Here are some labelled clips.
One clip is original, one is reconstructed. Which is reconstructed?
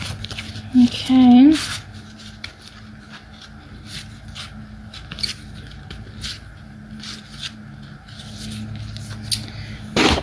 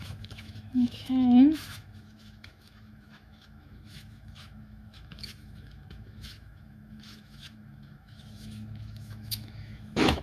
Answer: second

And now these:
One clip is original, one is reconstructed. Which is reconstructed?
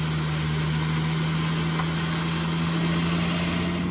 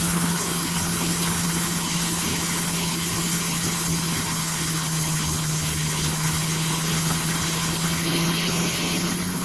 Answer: second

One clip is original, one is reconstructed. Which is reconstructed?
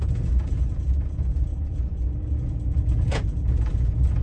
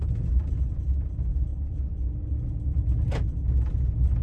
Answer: first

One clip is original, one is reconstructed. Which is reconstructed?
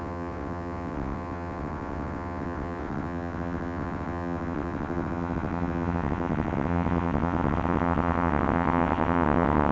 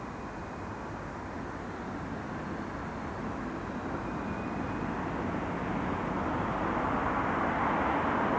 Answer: first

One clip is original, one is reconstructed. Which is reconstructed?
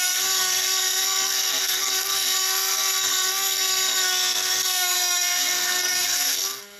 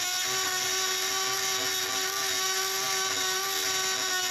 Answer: first